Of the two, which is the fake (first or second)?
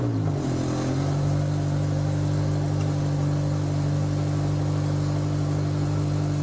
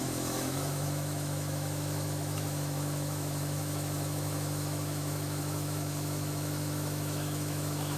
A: second